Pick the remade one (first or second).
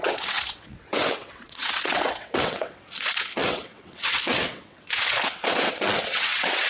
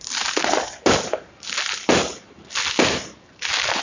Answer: first